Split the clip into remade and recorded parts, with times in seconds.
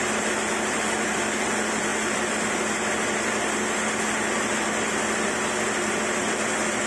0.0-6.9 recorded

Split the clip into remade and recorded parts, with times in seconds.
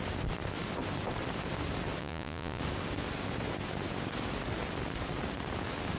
0.0-2.0 recorded; 2.0-2.6 remade; 2.6-6.0 recorded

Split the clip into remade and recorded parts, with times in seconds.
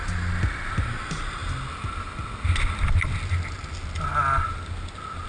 0.0-5.3 recorded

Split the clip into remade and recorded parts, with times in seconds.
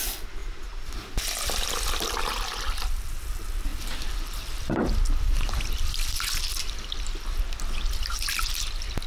0.0-3.7 recorded; 3.7-6.4 remade; 6.4-9.1 recorded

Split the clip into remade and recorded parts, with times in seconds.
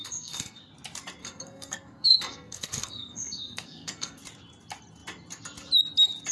0.0-0.7 remade; 0.7-1.2 recorded; 1.2-4.2 remade; 4.2-6.3 recorded